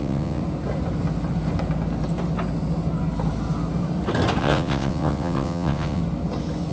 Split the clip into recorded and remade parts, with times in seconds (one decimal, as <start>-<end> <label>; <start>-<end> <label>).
0.0-0.4 remade; 0.4-4.4 recorded; 4.4-6.0 remade; 6.0-6.7 recorded